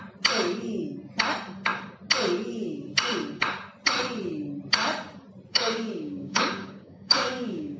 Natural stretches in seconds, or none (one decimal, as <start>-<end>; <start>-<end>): 0.0-5.5